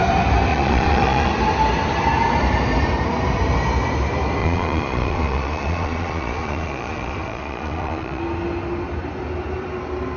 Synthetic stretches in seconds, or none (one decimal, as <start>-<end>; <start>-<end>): 0.5-1.3; 4.4-8.2